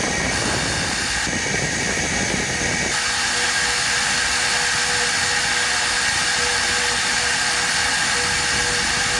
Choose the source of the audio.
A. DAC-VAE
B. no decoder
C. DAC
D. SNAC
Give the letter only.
B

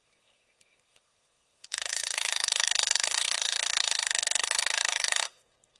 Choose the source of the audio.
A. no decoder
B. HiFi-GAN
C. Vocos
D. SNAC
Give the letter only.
D